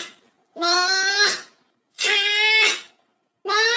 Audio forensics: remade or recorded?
recorded